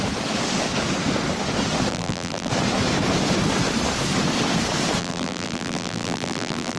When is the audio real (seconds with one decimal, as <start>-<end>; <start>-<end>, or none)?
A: 0.0-1.9; 2.5-5.0